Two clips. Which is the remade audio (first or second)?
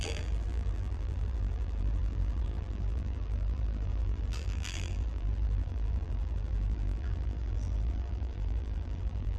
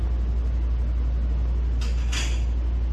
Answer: first